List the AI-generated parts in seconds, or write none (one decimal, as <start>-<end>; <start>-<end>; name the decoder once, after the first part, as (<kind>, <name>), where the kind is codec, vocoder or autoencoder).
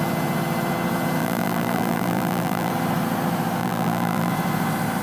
1.2-2.7 (vocoder, BigVGAN v2); 3.6-4.3